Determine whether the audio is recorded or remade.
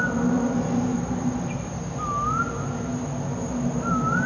recorded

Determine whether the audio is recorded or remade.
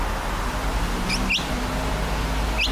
recorded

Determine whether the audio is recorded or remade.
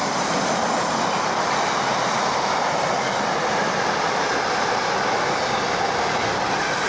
recorded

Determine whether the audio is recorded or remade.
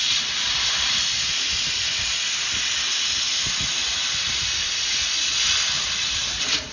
recorded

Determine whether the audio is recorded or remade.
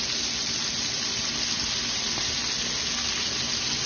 recorded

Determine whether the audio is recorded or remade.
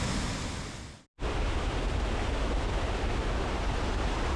recorded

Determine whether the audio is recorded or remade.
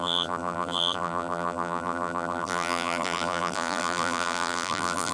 remade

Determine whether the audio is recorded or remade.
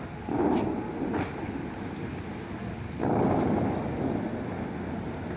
recorded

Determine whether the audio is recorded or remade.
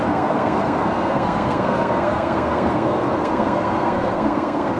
remade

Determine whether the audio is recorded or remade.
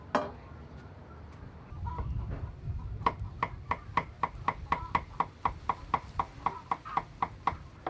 recorded